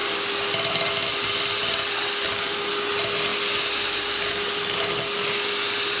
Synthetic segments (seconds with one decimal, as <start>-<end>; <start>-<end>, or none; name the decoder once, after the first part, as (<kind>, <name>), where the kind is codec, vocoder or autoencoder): none